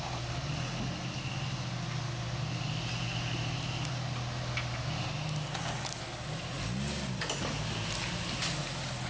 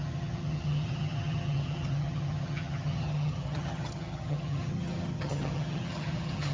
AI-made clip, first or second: second